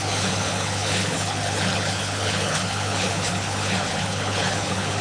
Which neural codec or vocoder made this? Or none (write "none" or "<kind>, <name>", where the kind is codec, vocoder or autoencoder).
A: codec, HILCodec